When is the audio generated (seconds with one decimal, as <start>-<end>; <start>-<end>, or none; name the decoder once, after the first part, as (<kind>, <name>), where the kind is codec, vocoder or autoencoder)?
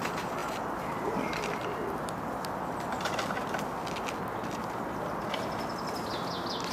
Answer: none